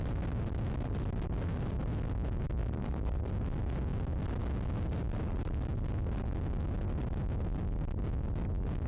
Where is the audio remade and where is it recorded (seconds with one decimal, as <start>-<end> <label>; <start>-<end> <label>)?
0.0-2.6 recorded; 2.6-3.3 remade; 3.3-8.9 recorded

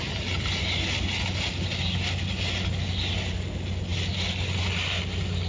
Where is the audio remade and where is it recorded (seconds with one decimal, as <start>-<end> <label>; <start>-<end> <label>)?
0.0-5.5 recorded

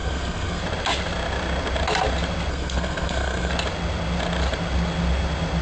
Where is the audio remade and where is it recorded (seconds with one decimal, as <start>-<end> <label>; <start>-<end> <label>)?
0.0-0.6 remade; 0.6-2.5 recorded; 2.5-3.5 remade; 3.5-5.6 recorded

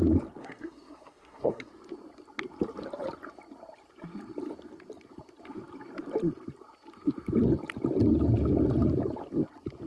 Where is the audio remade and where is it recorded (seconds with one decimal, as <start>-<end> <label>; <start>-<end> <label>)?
0.0-0.4 recorded; 0.4-1.7 remade; 1.7-9.9 recorded

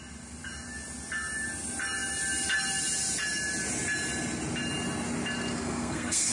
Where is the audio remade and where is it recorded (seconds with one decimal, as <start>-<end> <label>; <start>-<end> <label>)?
0.0-5.5 recorded; 5.5-6.3 remade

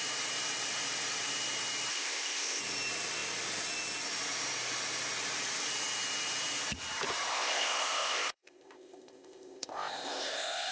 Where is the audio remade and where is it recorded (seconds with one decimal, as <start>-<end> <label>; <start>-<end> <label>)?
0.0-1.9 recorded; 1.9-2.6 remade; 2.6-7.3 recorded; 7.3-10.7 remade

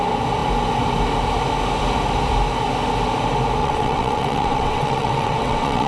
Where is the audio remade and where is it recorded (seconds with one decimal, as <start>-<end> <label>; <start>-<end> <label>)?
0.0-3.6 recorded; 3.6-5.9 remade

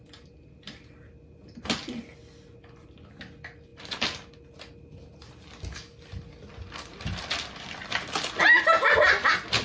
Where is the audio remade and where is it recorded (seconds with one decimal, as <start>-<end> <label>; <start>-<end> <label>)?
0.0-9.6 recorded